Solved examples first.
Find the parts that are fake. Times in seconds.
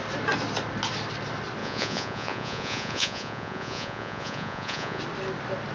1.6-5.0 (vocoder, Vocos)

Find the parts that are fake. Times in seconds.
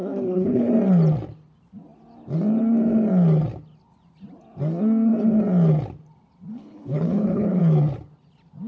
0.0-0.7 (codec, HILCodec); 6.5-7.6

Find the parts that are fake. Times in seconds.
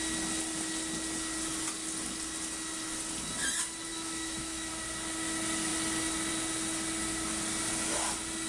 3.9-4.7 (autoencoder, DAC-VAE)